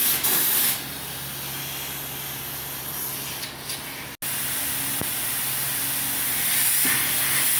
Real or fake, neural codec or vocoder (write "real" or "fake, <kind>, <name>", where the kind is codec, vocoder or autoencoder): real